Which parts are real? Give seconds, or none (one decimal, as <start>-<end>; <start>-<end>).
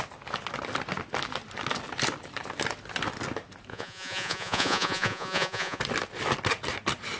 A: 0.0-3.7; 5.8-7.2